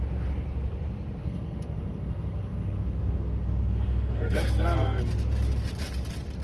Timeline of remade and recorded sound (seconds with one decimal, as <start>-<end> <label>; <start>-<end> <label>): 0.0-1.2 recorded; 1.2-5.0 remade; 5.0-6.4 recorded